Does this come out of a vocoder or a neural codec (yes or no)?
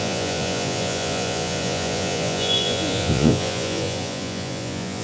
yes